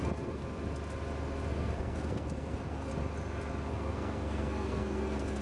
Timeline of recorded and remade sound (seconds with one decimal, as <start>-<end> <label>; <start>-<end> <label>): 0.0-0.4 remade; 0.4-1.5 recorded; 1.5-2.9 remade; 2.9-3.7 recorded; 3.7-5.4 remade